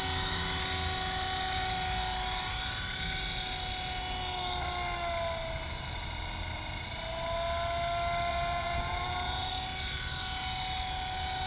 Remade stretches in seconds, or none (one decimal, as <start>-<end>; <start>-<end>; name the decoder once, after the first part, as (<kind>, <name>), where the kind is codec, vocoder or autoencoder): 8.3-9.5 (vocoder, Vocos)